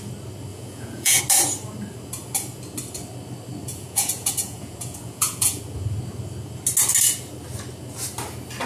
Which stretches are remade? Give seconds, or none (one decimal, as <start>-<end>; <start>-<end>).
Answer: 0.5-1.2; 3.7-5.6